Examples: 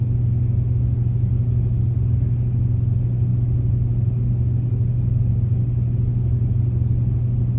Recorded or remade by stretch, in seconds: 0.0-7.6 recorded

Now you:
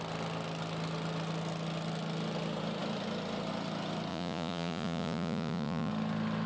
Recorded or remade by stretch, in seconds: 0.0-4.1 recorded; 4.1-5.9 remade; 5.9-6.5 recorded

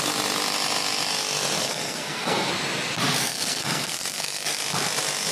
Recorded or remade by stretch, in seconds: 0.0-1.6 recorded; 1.6-2.5 remade; 2.5-3.2 recorded; 3.2-4.6 remade; 4.6-5.3 recorded